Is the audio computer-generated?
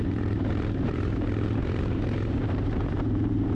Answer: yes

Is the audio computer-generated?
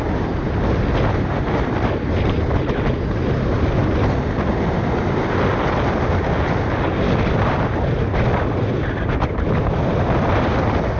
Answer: no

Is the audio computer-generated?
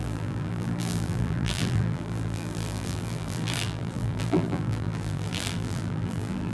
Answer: yes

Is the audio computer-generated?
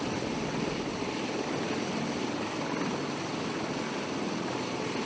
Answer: no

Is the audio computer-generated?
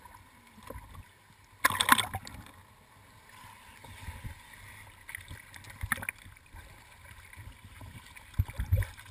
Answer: no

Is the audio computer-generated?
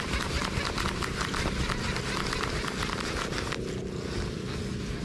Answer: no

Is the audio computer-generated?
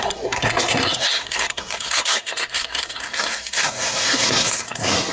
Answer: yes